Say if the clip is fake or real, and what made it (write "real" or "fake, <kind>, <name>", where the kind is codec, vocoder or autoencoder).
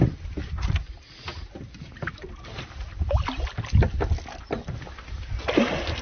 real